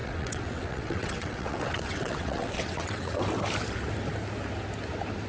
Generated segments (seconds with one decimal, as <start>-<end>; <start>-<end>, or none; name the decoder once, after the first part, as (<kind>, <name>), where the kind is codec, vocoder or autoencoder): 0.0-3.2 (vocoder, WaveNeXt)

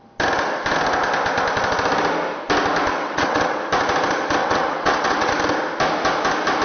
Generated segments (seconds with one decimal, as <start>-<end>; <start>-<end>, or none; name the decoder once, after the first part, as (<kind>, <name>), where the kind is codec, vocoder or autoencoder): 2.9-3.6 (vocoder, WaveNeXt); 4.4-5.3

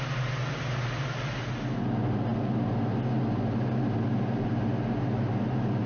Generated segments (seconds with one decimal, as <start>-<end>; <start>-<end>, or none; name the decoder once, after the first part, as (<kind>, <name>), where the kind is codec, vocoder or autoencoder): none